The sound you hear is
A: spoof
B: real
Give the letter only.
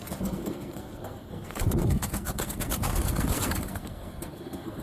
A